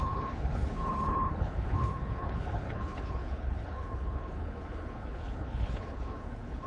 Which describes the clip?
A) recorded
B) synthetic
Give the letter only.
B